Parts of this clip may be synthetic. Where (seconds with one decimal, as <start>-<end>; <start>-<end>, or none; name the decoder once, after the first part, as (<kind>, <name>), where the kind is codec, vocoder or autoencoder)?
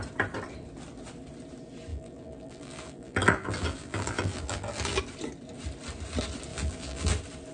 1.9-5.0 (vocoder, BigVGAN v2); 6.5-7.1